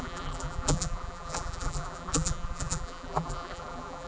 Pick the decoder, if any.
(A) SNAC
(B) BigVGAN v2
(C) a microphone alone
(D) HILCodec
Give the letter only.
B